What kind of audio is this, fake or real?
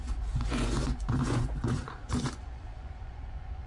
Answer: fake